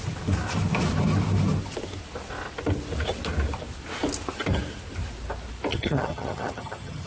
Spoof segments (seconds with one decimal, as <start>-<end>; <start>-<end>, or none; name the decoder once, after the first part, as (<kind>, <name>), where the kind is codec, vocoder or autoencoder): 5.7-7.1 (vocoder, HiFi-GAN)